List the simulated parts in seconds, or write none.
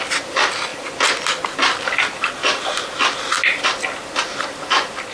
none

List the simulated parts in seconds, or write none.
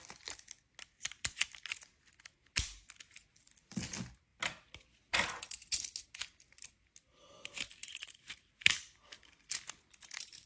7.8-8.6 (vocoder, BigVGAN v2)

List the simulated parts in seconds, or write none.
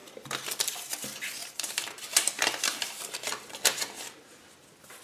0.0-0.7 (vocoder, BigVGAN v2); 1.4-4.4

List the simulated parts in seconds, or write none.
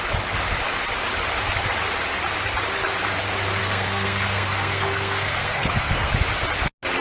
3.6-6.1 (codec, SNAC)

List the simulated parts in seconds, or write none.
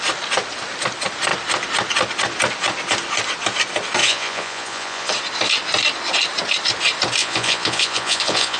4.0-5.1 (vocoder, Vocos); 7.2-8.6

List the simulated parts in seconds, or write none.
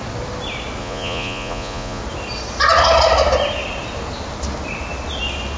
0.8-2.0 (vocoder, Vocos)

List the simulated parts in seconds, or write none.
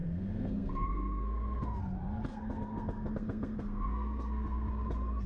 0.0-1.8 (codec, SNAC); 2.3-4.7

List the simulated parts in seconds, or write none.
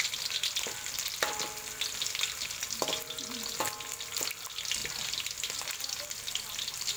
none